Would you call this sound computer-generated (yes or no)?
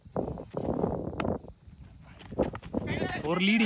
no